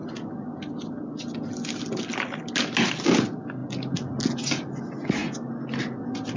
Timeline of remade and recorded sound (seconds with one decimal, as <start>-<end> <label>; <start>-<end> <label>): 0.0-6.4 recorded